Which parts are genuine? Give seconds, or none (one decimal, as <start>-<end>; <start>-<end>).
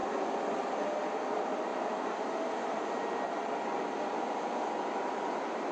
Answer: 0.0-1.1; 1.7-4.9